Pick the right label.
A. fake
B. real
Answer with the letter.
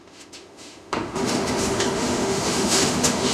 A